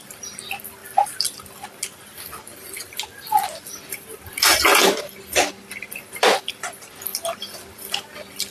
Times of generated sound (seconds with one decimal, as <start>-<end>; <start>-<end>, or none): 4.7-6.5